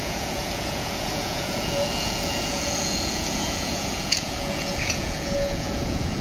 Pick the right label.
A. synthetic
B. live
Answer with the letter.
A